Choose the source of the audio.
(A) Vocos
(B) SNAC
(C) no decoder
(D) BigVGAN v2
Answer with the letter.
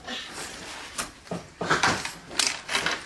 C